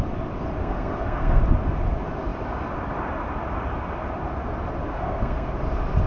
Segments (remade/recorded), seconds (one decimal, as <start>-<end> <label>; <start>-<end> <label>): 0.0-0.6 recorded; 0.6-1.4 remade; 1.4-4.9 recorded; 4.9-5.5 remade; 5.5-6.1 recorded